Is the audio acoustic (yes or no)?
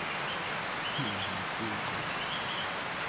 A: yes